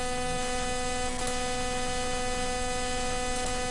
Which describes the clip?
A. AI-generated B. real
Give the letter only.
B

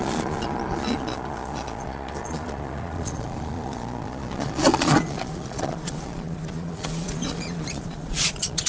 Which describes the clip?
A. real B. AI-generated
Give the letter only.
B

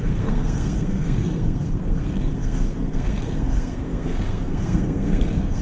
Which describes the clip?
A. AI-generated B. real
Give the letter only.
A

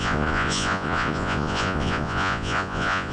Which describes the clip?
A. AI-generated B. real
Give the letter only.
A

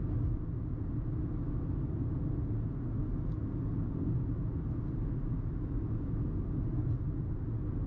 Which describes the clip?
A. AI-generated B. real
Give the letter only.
B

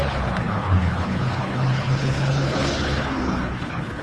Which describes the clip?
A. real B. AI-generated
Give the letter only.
B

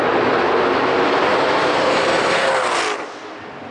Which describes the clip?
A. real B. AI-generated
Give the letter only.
A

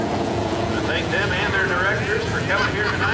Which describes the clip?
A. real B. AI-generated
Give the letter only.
B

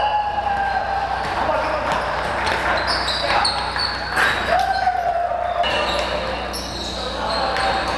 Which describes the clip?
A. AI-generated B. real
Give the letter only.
B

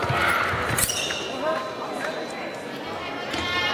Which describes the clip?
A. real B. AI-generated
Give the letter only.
A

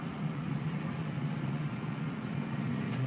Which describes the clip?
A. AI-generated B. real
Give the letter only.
A